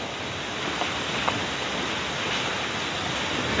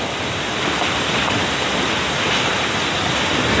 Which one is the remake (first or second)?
second